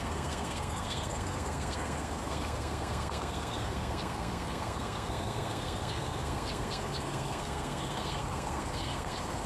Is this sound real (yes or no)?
no